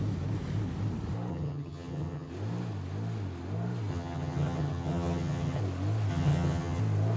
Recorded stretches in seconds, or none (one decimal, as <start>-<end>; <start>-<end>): 0.0-1.3; 2.3-3.9; 5.6-6.1; 6.8-7.2